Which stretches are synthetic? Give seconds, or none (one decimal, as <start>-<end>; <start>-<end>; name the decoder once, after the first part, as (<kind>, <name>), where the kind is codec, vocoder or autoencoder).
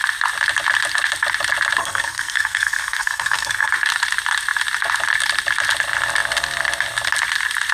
1.8-3.7 (codec, SNAC)